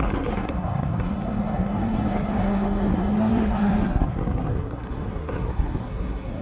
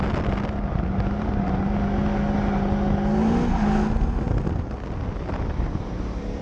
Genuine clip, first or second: second